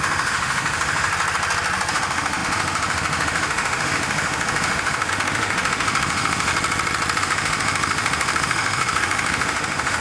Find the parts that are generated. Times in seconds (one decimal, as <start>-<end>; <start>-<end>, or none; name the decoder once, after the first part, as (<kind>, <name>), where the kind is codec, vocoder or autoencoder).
0.0-1.1 (autoencoder, DAC-VAE); 1.9-6.5; 7.2-10.0